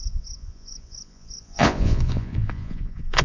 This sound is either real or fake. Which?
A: fake